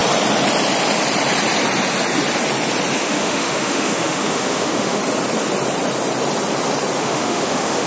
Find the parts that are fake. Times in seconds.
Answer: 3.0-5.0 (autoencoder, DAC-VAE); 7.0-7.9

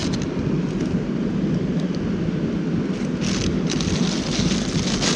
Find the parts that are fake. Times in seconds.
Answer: none

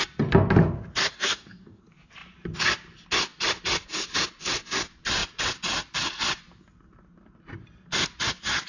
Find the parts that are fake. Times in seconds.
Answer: 1.0-1.8 (codec, DAC)

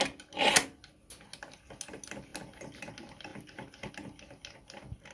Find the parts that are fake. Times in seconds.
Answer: none

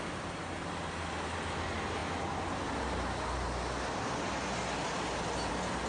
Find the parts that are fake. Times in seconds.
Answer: none

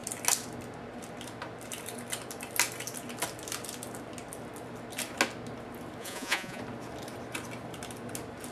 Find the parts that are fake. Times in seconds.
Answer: 6.0-6.6 (vocoder, Vocos)

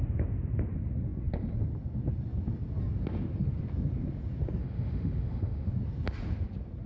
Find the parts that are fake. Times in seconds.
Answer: 4.6-5.7 (autoencoder, DAC-VAE)